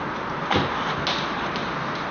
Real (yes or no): yes